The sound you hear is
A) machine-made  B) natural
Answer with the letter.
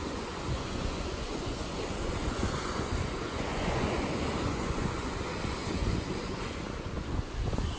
A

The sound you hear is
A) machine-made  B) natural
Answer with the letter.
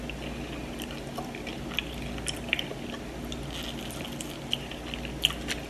B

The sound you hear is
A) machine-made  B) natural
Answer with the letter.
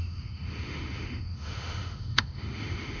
A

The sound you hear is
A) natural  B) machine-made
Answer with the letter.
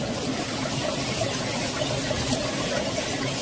A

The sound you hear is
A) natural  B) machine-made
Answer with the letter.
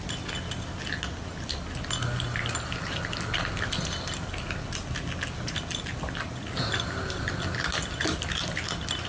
A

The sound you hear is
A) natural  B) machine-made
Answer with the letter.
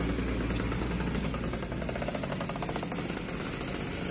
A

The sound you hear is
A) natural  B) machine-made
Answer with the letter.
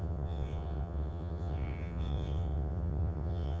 B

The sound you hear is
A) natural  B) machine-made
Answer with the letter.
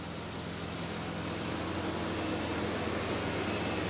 A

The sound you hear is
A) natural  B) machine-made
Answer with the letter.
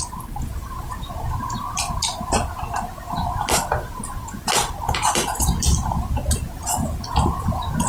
A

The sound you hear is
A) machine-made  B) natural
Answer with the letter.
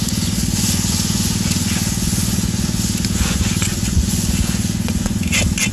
A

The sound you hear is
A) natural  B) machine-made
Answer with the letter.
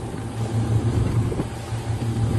A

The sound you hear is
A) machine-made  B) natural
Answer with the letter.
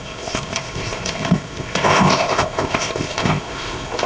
A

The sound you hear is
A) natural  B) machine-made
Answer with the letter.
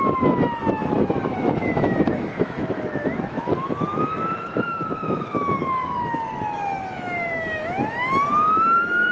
B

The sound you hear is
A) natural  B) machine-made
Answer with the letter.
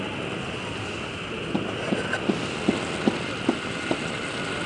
A